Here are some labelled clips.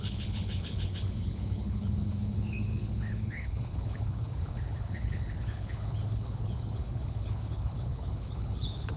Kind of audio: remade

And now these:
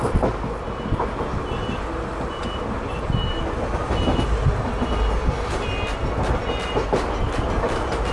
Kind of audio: recorded